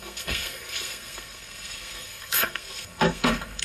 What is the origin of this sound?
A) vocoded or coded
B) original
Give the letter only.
A